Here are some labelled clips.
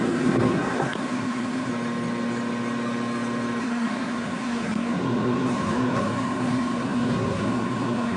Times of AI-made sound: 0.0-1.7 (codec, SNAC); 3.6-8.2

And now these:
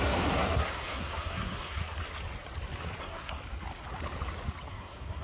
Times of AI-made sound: 0.0-1.8 (codec, SNAC); 3.0-3.4; 4.7-5.2

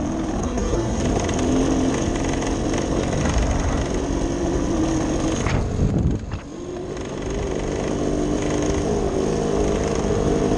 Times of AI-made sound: 0.4-1.0 (codec, SNAC)

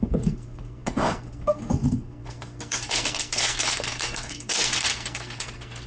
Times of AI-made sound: 0.0-5.9 (codec, SNAC)

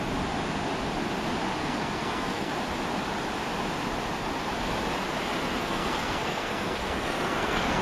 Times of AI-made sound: 1.6-2.5 (codec, SNAC); 5.6-7.8